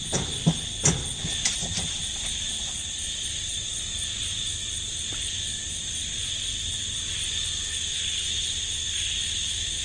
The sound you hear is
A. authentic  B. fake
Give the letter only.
A